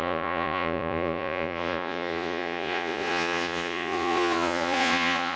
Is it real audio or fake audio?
fake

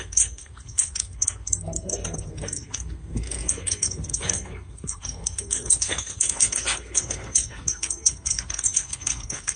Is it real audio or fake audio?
fake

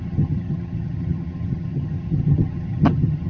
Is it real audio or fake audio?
fake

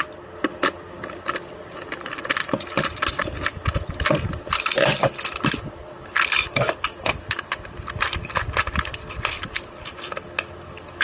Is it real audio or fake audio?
real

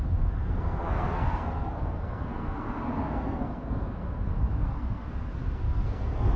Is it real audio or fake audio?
fake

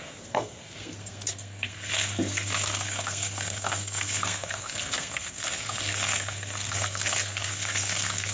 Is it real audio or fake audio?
fake